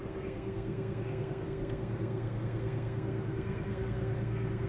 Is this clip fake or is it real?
fake